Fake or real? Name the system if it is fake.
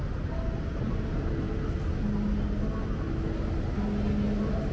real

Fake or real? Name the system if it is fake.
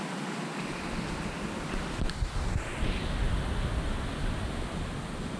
real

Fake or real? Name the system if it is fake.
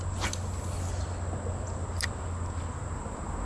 real